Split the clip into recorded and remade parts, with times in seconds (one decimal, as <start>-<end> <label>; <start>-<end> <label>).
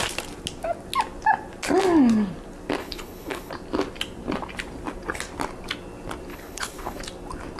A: 0.0-2.8 recorded; 2.8-3.5 remade; 3.5-6.3 recorded; 6.3-7.0 remade; 7.0-7.6 recorded